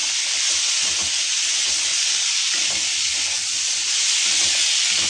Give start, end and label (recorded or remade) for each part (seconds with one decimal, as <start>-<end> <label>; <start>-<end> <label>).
0.0-5.1 recorded